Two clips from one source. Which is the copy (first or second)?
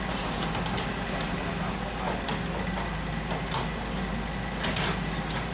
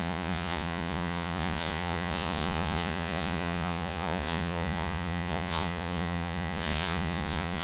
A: second